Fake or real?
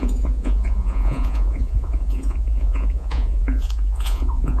fake